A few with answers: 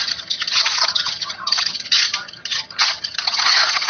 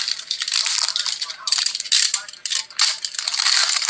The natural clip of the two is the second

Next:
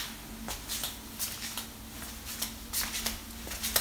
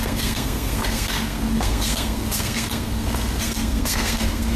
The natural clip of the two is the first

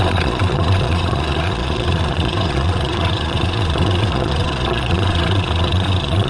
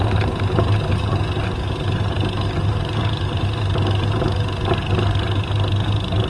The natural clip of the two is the second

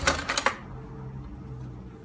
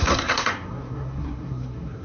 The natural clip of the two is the first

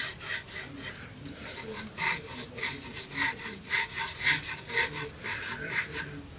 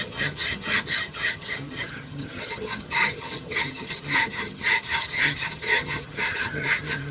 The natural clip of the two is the first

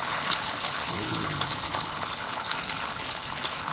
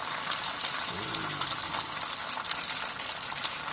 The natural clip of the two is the second